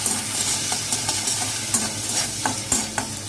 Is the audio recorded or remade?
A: recorded